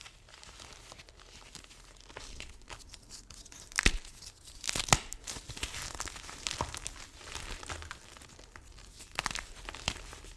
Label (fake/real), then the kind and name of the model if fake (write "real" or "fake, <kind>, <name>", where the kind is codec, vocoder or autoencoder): real